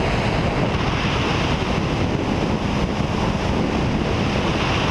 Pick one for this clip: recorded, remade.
recorded